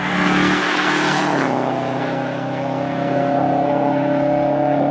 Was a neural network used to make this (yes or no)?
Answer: yes